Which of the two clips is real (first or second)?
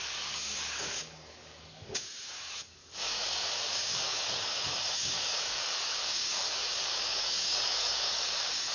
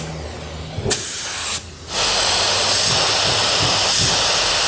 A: second